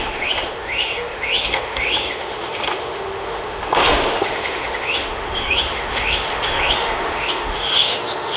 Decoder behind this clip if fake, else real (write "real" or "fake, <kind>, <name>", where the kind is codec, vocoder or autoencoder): fake, autoencoder, DAC-VAE